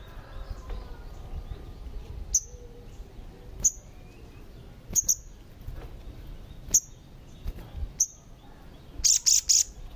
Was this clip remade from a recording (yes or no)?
no